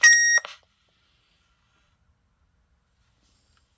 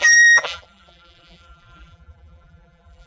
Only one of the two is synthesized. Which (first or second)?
second